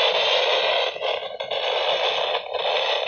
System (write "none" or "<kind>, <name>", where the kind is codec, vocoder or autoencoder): none